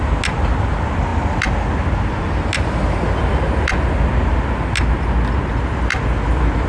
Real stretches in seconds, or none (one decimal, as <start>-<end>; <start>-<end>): 0.0-6.7